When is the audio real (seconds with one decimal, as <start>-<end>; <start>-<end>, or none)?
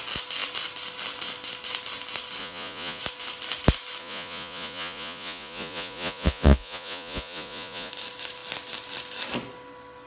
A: 0.0-2.4; 3.0-4.0; 7.9-10.1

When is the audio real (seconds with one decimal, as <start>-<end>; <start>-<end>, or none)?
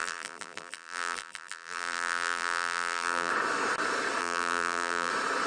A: 3.3-4.2; 5.1-5.5